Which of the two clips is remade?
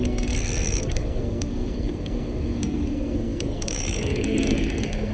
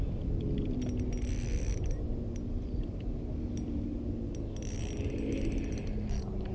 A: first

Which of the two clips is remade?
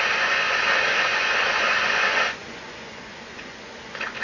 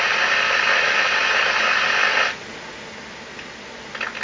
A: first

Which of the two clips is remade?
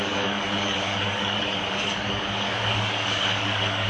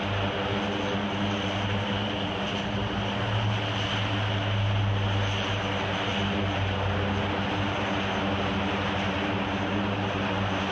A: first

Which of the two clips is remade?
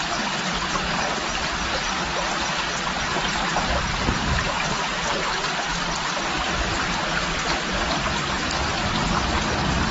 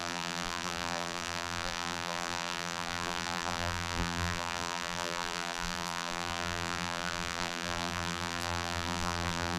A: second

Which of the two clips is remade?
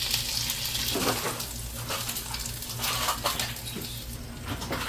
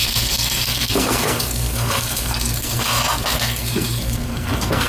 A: second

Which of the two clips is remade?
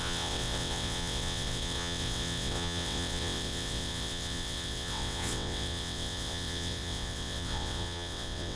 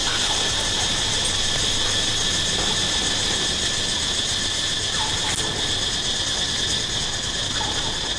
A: first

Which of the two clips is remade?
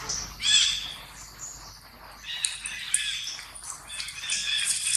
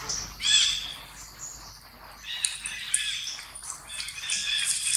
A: second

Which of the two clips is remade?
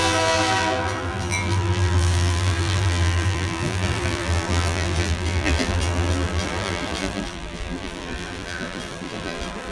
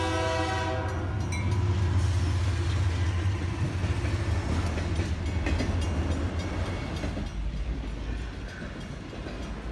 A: first